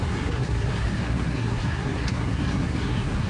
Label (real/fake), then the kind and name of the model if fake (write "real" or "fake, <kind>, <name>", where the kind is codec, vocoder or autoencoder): fake, codec, SNAC